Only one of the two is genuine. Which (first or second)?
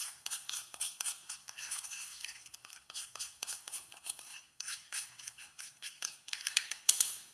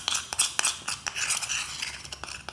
second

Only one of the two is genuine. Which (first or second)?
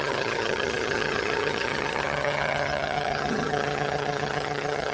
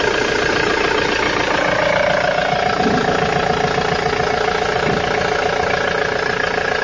second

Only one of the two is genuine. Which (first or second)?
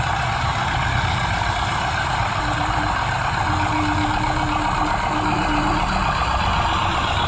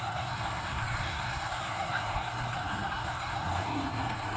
first